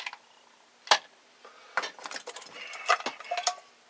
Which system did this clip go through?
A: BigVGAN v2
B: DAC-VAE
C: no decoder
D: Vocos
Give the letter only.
C